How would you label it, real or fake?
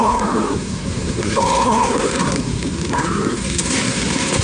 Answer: fake